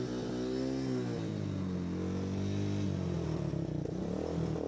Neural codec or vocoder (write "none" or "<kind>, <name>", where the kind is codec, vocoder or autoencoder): none